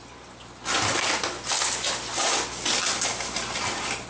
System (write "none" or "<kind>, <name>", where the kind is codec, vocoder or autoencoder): none